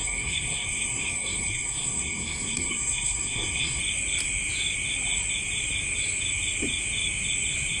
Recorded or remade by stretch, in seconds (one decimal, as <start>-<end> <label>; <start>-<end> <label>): 0.0-3.8 remade; 3.8-7.8 recorded